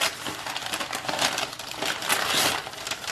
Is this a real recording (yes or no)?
yes